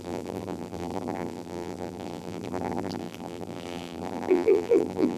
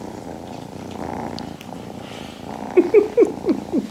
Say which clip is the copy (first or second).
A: first